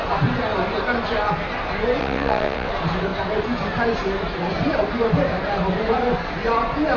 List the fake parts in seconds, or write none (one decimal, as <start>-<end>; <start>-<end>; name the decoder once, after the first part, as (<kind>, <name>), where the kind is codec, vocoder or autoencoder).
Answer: 2.0-2.7 (vocoder, WaveNeXt)